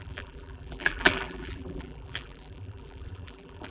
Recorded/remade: remade